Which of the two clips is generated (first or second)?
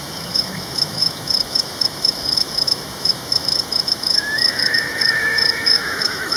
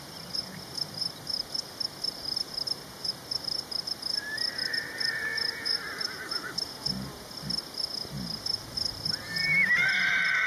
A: first